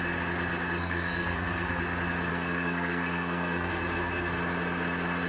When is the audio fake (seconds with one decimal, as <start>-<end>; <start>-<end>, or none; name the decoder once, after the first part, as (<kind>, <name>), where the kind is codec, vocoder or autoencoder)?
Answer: 0.8-1.8 (codec, SNAC); 2.3-3.7